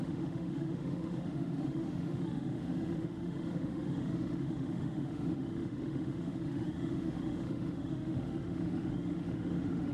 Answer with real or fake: fake